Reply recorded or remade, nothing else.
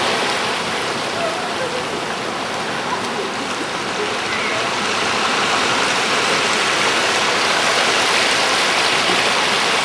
recorded